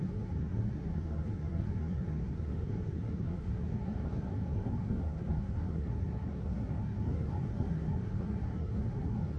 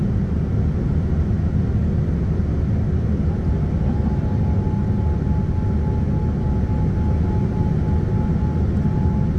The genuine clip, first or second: second